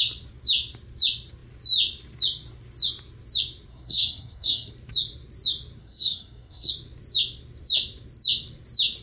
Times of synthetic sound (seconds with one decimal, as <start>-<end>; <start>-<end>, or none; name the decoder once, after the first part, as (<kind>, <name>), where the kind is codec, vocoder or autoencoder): 3.7-4.7 (codec, SNAC); 5.8-6.7